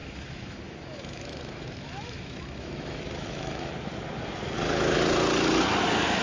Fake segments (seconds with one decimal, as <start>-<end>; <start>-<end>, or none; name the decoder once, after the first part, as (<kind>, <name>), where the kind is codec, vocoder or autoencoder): 0.0-3.7 (autoencoder, DAC-VAE)